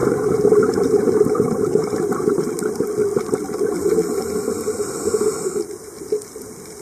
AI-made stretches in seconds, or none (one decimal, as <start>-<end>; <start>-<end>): 0.0-2.5